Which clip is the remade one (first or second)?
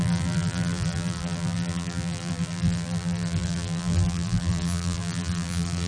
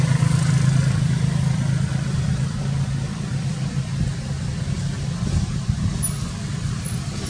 first